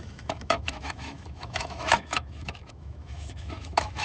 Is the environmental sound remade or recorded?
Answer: remade